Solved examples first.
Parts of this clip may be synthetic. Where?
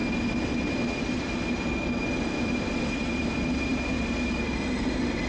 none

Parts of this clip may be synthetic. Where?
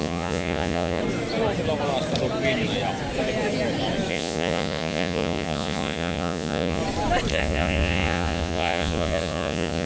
0.0-1.0 (vocoder, Vocos); 4.1-6.8; 7.3-9.9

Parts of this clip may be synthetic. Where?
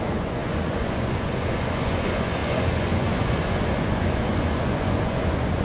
0.0-5.6 (vocoder, Vocos)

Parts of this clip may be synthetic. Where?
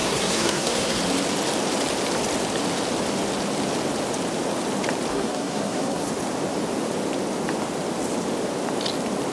0.0-1.0 (codec, SNAC); 5.1-6.1